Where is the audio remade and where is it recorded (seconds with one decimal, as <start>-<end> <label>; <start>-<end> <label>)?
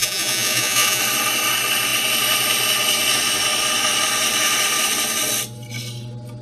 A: 0.0-1.0 remade; 1.0-6.4 recorded